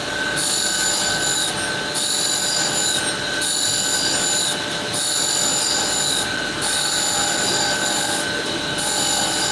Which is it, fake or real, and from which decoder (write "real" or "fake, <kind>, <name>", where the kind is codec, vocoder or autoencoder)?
real